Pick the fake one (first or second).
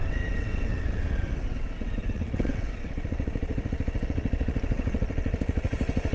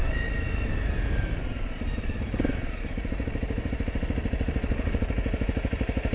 first